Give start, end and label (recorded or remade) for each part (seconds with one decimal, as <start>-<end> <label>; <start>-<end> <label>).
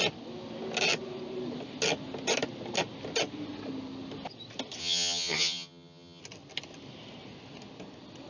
0.0-4.8 recorded; 4.8-6.2 remade; 6.2-8.3 recorded